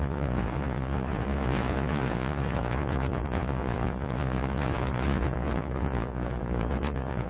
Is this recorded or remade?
remade